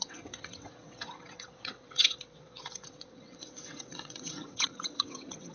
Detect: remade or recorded remade